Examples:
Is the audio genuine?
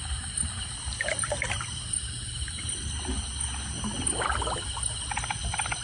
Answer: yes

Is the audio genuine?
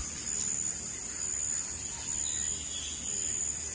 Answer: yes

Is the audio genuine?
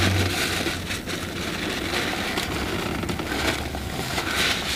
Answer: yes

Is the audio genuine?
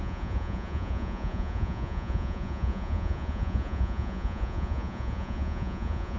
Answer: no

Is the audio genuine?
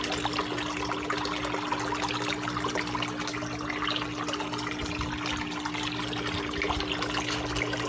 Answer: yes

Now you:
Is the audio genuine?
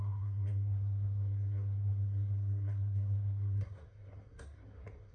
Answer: no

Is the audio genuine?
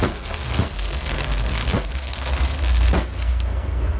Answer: no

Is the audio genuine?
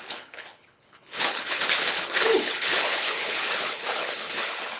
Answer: no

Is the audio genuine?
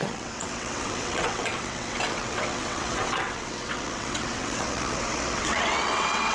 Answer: no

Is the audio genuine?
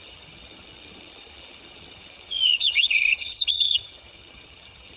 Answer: no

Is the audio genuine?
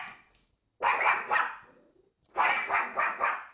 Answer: yes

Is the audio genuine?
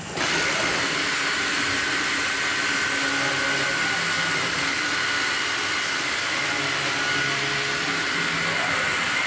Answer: yes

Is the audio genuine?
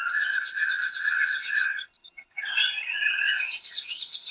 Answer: no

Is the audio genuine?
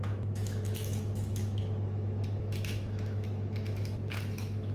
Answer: no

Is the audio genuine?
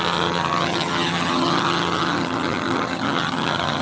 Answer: no